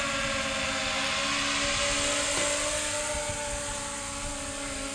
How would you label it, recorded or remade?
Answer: recorded